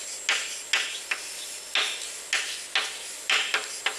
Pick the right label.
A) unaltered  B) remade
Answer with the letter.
A